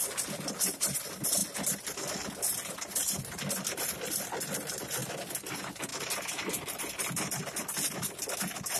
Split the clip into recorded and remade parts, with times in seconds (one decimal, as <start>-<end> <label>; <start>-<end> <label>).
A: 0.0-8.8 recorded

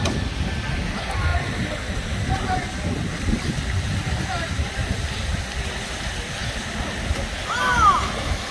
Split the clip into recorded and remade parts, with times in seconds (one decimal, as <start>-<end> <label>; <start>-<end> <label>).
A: 0.0-8.5 recorded

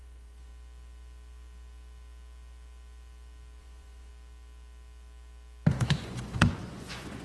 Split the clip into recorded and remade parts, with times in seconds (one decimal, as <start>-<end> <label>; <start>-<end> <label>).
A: 0.0-0.5 remade; 0.5-3.6 recorded; 3.6-4.1 remade; 4.1-5.7 recorded; 5.7-7.2 remade